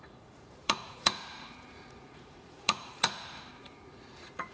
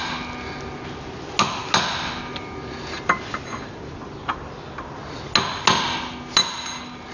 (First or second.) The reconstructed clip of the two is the first